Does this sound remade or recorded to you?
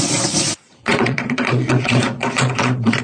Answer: remade